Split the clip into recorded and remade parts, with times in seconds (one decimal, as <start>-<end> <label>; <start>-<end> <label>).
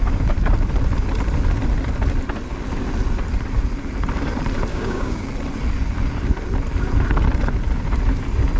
0.0-4.7 recorded; 4.7-5.3 remade; 5.3-8.6 recorded